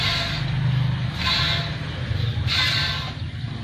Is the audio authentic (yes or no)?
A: yes